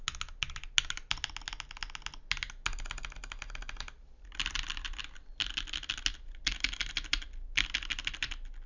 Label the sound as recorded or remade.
recorded